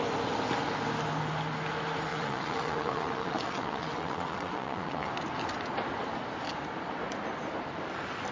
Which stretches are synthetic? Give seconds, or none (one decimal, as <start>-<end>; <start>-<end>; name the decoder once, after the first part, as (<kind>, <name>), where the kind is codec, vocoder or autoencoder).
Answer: 2.1-5.1 (vocoder, WaveNeXt)